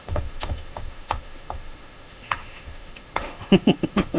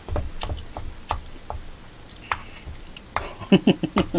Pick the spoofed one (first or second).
first